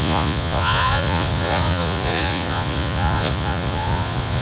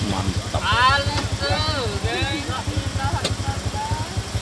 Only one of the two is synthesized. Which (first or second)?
first